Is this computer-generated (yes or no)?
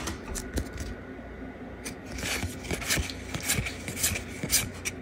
no